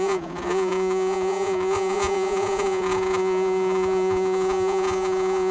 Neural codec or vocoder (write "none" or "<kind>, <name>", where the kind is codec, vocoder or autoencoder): vocoder, Vocos